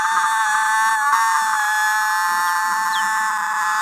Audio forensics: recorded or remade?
recorded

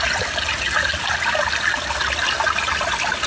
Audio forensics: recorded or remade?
recorded